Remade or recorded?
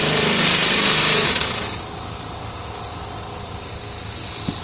recorded